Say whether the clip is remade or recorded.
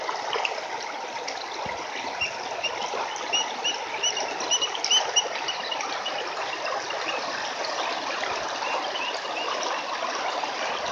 recorded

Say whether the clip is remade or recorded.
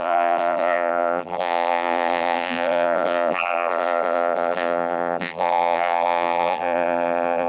remade